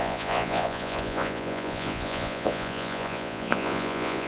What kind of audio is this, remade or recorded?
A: remade